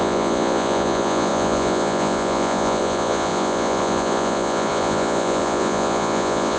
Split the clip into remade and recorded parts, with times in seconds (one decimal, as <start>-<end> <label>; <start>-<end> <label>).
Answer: 0.0-6.6 remade